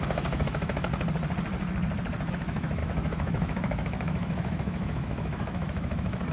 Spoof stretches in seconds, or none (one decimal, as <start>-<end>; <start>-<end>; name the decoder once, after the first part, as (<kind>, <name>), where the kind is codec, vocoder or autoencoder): 0.0-0.9 (autoencoder, DAC-VAE); 2.3-6.3